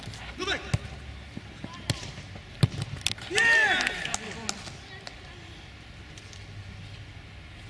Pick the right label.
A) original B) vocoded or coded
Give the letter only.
A